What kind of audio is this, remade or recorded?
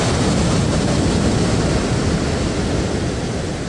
recorded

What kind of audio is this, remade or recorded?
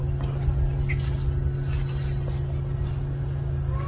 recorded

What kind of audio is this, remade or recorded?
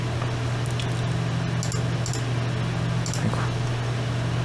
recorded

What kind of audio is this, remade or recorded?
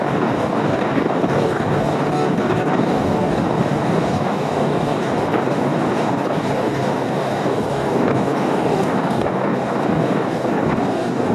remade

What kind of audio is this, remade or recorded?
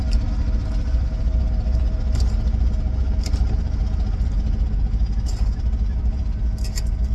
recorded